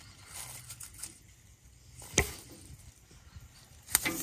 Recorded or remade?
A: recorded